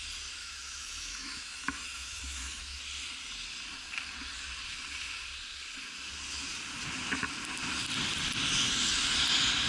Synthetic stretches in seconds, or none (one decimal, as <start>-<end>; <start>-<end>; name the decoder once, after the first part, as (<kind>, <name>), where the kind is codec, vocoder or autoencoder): 0.4-2.8 (autoencoder, DAC-VAE)